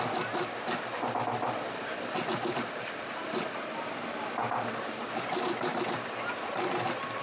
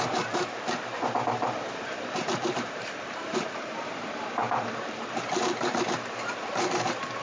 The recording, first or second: first